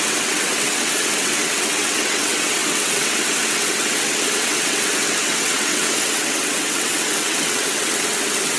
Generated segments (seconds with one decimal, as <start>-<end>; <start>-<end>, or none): 0.0-8.6